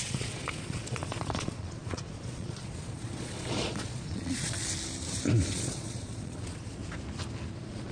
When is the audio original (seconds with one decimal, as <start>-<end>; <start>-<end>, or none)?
4.6-5.5; 6.8-7.5